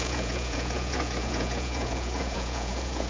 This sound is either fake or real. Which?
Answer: fake